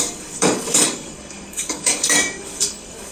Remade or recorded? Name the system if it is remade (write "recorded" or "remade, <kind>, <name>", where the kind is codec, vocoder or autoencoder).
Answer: remade, codec, DAC